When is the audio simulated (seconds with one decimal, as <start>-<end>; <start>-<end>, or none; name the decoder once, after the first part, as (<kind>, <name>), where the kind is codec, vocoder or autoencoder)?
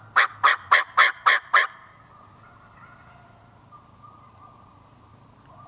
none